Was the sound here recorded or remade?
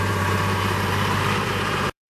remade